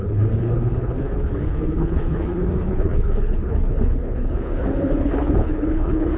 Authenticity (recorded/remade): remade